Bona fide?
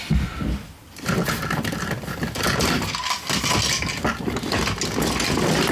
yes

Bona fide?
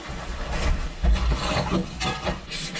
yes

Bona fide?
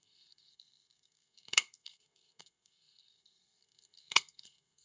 no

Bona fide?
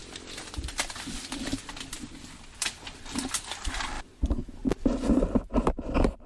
yes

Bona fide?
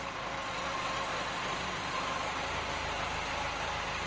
yes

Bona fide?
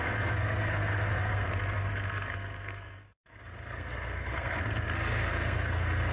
no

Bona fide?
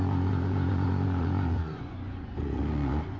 no